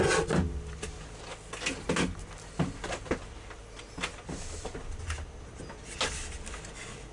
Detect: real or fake real